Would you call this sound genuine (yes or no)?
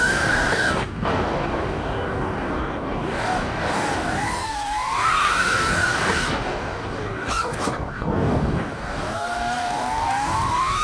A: no